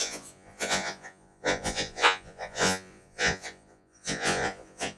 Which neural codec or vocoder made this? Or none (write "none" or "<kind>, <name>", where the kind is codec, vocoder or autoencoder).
vocoder, Vocos